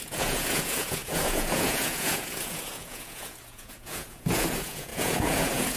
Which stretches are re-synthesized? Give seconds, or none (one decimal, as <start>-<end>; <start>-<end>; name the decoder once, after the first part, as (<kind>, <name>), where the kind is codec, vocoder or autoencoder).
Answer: 0.0-5.8 (vocoder, Vocos)